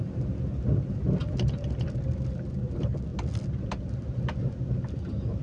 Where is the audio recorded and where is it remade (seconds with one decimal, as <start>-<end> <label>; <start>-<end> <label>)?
0.0-5.4 recorded